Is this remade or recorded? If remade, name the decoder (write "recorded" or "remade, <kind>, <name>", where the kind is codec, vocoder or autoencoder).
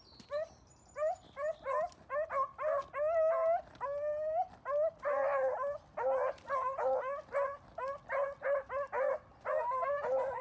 recorded